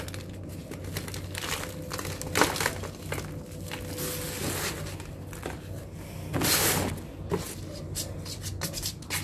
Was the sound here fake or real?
real